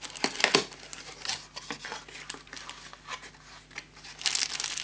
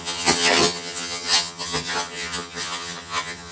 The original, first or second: first